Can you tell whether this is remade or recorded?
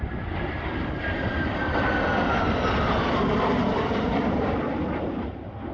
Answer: recorded